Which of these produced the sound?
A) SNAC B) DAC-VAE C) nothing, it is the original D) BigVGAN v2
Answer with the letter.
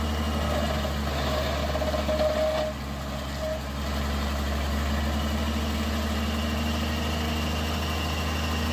C